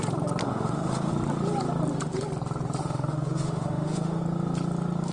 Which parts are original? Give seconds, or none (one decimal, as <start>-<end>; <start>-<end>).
0.0-0.4; 1.1-2.8; 4.2-5.1